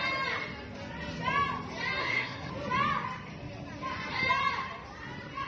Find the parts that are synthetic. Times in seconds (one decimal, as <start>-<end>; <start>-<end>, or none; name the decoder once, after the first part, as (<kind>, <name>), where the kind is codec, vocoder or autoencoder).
2.0-2.5 (codec, SNAC)